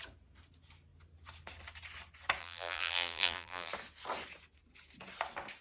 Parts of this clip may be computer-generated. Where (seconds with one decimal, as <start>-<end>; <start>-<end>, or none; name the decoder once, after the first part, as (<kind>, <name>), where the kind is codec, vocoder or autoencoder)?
2.4-3.7 (vocoder, BigVGAN v2)